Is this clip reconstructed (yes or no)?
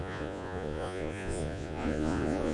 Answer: yes